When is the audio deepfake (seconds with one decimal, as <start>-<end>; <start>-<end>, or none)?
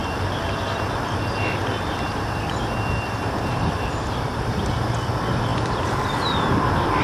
0.0-1.0; 1.6-4.6